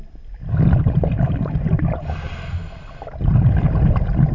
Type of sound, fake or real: real